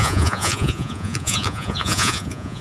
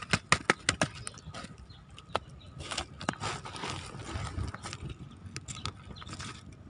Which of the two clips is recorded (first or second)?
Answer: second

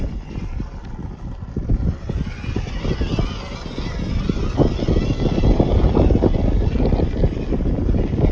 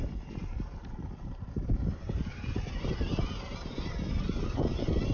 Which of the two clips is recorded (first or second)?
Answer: first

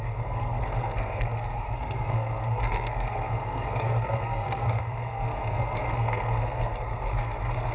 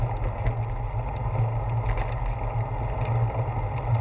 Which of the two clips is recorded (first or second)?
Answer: second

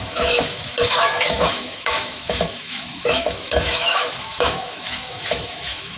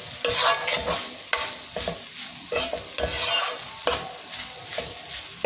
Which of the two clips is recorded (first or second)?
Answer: second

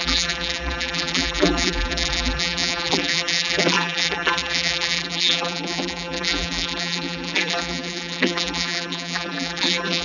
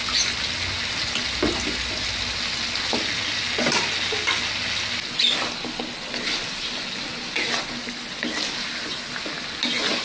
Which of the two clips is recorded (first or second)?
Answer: second